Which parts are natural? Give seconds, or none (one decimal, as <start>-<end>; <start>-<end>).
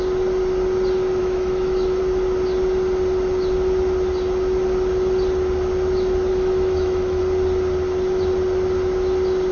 0.0-1.2; 2.0-6.3; 7.2-9.5